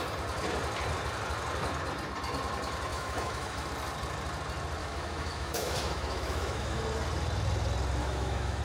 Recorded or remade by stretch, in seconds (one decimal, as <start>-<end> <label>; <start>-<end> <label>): 0.0-2.9 recorded; 2.9-3.7 remade; 3.7-4.8 recorded; 4.8-6.8 remade; 6.8-8.0 recorded; 8.0-8.6 remade

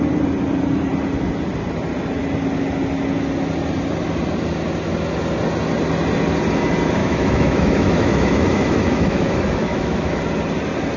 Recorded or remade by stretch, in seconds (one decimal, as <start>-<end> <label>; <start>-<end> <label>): 0.0-7.0 recorded; 7.0-10.2 remade; 10.2-11.0 recorded

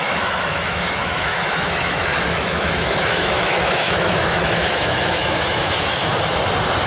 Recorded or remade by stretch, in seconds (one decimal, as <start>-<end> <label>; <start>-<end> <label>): 0.0-6.1 remade; 6.1-6.9 recorded

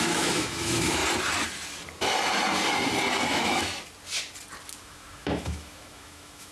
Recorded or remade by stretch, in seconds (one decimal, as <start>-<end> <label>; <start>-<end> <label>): 0.0-1.0 remade; 1.0-3.3 recorded; 3.3-3.7 remade; 3.7-4.8 recorded; 4.8-6.5 remade